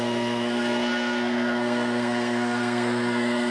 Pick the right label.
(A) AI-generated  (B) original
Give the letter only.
A